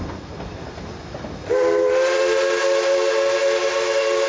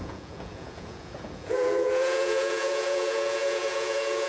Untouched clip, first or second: first